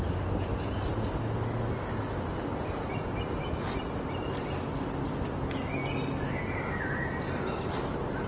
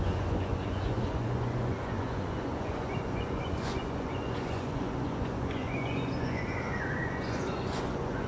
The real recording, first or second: first